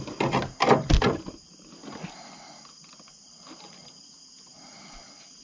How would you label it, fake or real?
real